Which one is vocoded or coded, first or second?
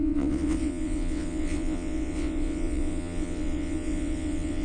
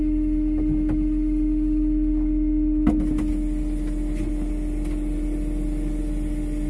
first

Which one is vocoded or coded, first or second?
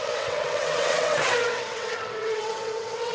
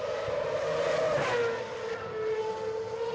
first